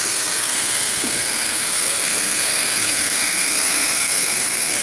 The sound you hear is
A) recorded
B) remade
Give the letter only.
B